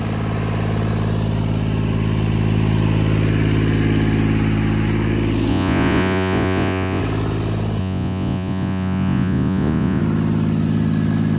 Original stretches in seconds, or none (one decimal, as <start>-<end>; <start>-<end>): 0.0-5.5; 7.0-7.8; 10.0-11.4